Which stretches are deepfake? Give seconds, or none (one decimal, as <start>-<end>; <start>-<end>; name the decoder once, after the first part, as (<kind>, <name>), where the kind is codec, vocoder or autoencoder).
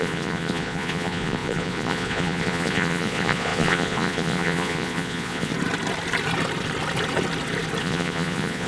0.0-5.5 (vocoder, Vocos); 7.8-8.7